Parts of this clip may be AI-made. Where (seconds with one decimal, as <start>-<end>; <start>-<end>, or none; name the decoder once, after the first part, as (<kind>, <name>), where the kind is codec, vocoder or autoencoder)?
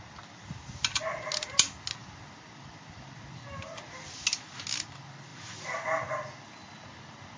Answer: none